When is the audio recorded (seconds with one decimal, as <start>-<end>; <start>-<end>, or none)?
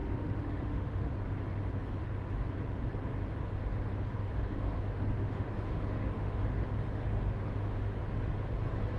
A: 1.1-3.6; 8.0-9.0